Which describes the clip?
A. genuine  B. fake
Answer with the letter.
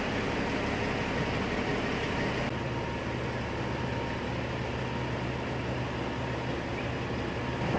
A